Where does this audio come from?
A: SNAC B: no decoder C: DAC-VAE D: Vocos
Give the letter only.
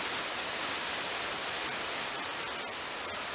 B